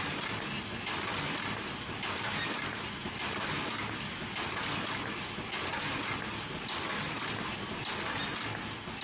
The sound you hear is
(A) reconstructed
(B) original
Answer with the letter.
B